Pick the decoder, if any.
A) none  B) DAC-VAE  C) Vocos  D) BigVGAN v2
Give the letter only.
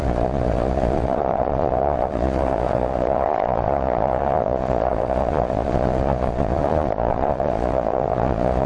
C